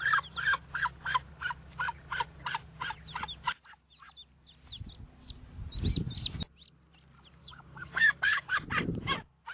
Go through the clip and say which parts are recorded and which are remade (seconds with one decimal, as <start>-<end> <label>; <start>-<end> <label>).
0.0-7.4 recorded; 7.4-8.4 remade; 8.4-9.5 recorded